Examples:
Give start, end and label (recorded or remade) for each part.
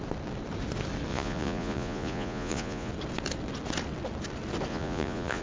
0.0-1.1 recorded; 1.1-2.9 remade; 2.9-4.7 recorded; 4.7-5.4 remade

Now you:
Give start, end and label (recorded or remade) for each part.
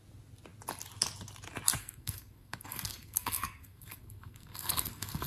0.0-1.8 recorded; 1.8-5.3 remade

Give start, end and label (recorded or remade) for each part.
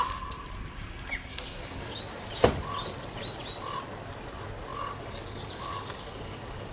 0.0-1.3 recorded; 1.3-2.0 remade; 2.0-4.7 recorded; 4.7-6.7 remade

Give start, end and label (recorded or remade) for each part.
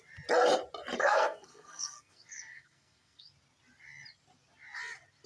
0.0-1.0 recorded; 1.0-3.3 remade; 3.3-5.3 recorded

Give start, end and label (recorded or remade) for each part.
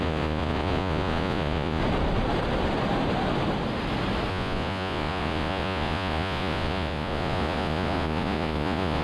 0.0-1.8 remade; 1.8-4.3 recorded; 4.3-9.0 remade